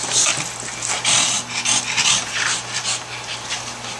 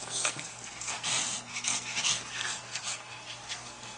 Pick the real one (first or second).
first